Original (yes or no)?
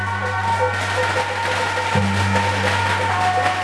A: yes